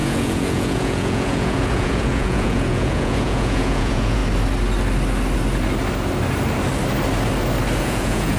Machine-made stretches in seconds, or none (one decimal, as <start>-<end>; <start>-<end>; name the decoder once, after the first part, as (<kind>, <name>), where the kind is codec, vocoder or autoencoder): 0.0-4.2 (vocoder, Vocos); 7.8-8.4